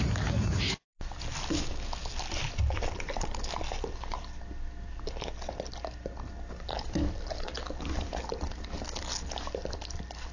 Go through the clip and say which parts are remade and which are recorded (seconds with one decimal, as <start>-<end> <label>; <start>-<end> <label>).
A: 0.0-10.3 recorded